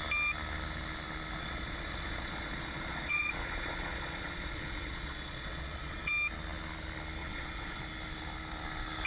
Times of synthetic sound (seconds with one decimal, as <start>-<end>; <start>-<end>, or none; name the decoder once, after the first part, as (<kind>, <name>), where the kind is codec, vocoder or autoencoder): 1.4-6.1 (vocoder, Vocos); 7.2-7.8

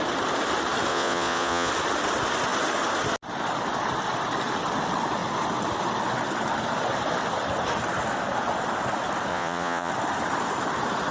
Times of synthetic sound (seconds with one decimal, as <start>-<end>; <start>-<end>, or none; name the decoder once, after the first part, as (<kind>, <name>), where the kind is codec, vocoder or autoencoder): 0.9-1.7 (vocoder, Vocos); 9.3-9.9

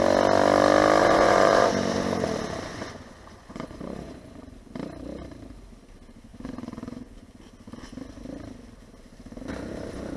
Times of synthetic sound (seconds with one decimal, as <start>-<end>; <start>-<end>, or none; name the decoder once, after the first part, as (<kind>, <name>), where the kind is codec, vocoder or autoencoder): 1.0-1.7 (vocoder, Vocos); 2.7-4.7; 6.3-7.4

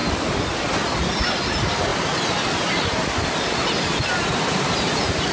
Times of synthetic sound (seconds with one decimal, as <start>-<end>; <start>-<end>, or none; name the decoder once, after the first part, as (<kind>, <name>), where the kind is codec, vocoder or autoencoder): none

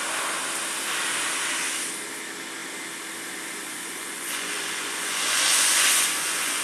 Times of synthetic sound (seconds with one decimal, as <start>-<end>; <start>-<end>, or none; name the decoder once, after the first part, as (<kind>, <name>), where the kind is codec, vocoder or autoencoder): 3.6-6.6 (vocoder, Vocos)